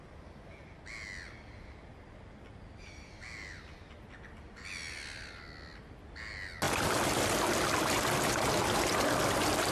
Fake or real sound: real